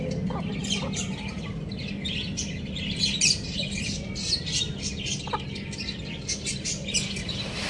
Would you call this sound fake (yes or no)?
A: no